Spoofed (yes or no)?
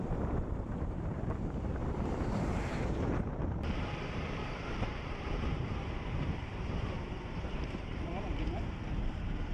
yes